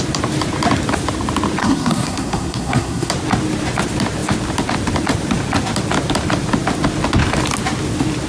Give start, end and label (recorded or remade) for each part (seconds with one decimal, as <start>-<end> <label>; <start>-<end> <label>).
0.0-1.6 recorded; 1.6-3.1 remade; 3.1-8.3 recorded